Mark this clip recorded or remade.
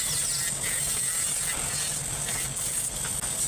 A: recorded